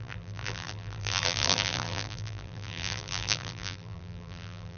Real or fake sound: fake